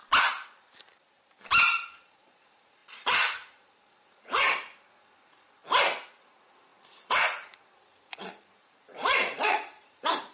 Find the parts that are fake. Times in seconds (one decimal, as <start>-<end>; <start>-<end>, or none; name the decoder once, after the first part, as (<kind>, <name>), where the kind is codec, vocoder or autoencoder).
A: 1.9-5.6 (vocoder, Vocos); 6.2-10.3